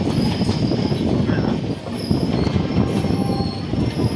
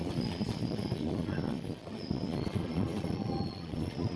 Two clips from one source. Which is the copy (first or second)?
second